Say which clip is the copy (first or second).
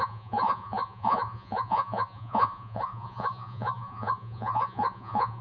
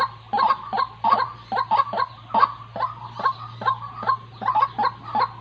first